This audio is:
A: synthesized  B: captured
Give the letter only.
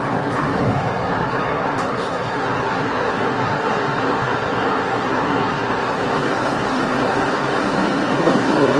A